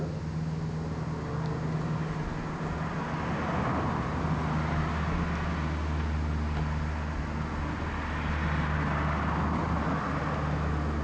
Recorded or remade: recorded